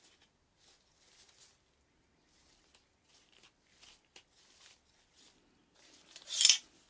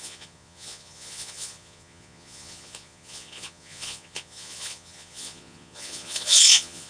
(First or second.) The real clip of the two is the first